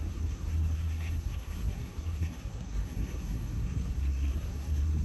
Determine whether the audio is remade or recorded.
remade